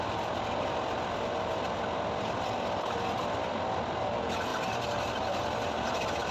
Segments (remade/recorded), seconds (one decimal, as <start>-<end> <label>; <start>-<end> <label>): 0.0-6.3 recorded